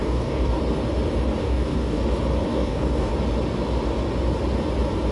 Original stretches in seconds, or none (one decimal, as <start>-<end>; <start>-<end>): 0.6-1.4; 2.0-2.5; 3.1-5.1